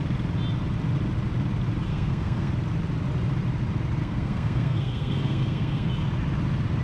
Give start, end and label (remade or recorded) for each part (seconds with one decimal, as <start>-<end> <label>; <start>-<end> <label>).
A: 0.0-1.9 recorded; 1.9-2.5 remade; 2.5-4.0 recorded; 4.0-5.9 remade; 5.9-6.8 recorded